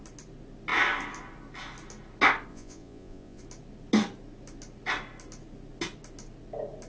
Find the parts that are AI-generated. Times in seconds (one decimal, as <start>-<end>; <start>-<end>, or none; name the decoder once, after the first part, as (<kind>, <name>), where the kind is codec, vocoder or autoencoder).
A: 2.5-3.4 (vocoder, Vocos)